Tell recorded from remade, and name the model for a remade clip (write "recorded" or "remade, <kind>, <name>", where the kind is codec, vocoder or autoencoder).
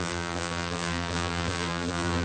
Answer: remade, vocoder, BigVGAN v2